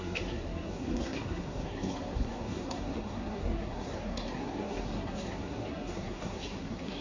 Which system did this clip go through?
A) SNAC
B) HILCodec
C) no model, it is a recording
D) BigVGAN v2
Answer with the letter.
A